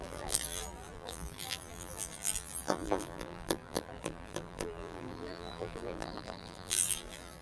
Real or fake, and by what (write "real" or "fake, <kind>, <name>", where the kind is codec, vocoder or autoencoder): fake, vocoder, BigVGAN v2